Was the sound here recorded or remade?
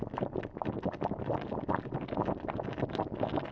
recorded